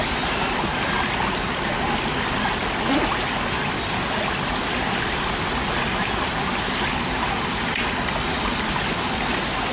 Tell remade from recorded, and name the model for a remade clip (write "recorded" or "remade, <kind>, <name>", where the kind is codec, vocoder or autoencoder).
recorded